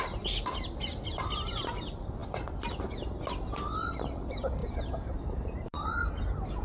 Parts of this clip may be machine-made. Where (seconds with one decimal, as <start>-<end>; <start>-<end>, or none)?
4.6-6.1